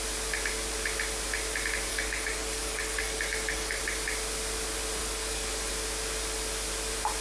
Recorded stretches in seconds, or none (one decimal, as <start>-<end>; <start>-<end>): 0.0-1.9; 3.8-5.0; 5.7-7.2